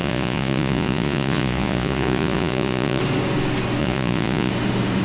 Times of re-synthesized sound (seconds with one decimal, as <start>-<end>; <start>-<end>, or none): 0.0-3.0; 3.8-4.5